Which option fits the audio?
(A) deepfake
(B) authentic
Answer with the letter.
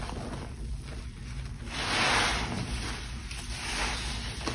B